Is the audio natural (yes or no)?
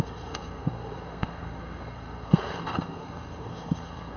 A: no